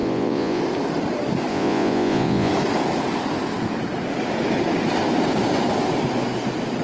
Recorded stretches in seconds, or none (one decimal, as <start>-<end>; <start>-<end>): 0.6-1.5; 2.5-6.8